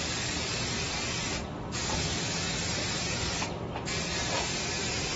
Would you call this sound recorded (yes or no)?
yes